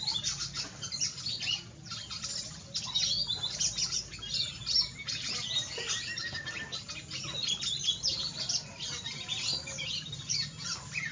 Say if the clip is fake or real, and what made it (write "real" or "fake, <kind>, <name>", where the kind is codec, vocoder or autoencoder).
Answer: real